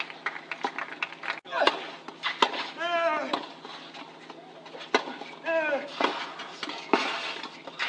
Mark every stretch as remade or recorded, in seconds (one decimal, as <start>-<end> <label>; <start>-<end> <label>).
0.0-7.9 recorded